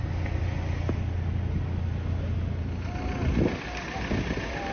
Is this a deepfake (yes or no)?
no